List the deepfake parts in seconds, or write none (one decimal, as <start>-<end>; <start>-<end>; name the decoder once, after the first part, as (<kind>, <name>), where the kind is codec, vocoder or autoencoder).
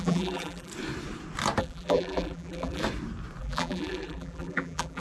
0.0-0.7 (vocoder, BigVGAN v2); 1.6-2.8; 3.4-5.0